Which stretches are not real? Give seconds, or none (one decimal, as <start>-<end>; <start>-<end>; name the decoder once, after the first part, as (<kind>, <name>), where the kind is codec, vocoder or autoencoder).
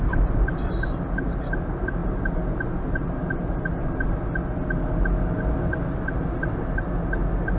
none